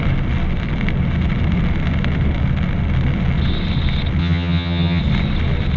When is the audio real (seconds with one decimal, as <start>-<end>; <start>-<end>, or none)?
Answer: 0.0-4.2; 5.0-5.8